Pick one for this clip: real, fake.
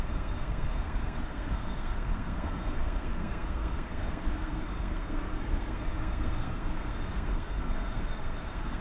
fake